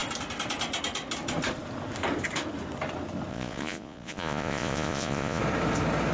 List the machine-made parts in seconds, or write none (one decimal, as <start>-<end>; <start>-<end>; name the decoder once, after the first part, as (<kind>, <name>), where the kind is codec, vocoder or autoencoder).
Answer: 3.3-5.4 (vocoder, Vocos)